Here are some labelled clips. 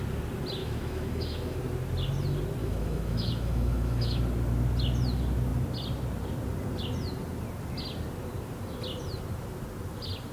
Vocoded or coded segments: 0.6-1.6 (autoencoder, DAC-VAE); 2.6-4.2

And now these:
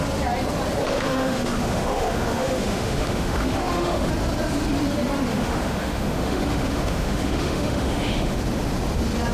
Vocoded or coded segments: 0.8-4.1 (autoencoder, DAC-VAE); 5.3-8.4

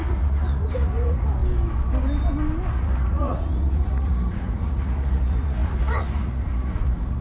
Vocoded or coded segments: 0.0-1.4 (vocoder, Vocos); 2.7-7.2

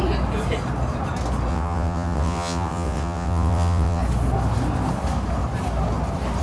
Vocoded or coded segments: 1.5-4.0 (vocoder, WaveNeXt)

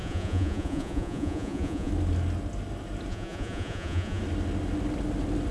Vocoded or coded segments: 0.0-1.9 (vocoder, Vocos); 3.1-4.2

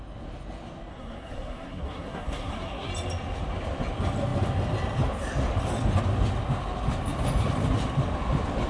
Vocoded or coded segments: 0.9-2.9 (codec, SNAC)

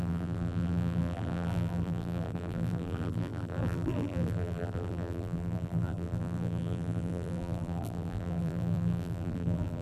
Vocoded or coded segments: 0.0-9.8 (vocoder, BigVGAN v2)